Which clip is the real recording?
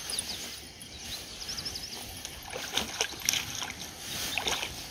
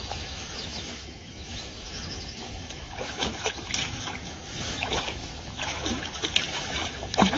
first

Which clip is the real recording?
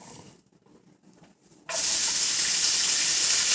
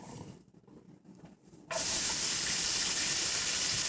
first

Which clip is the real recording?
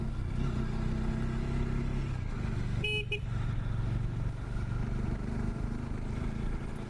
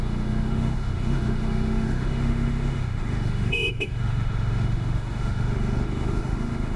first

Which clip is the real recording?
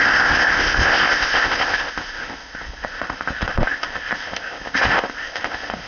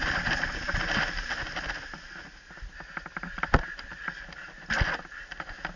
second